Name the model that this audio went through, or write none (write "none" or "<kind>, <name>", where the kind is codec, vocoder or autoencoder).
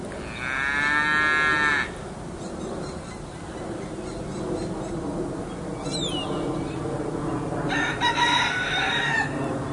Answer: none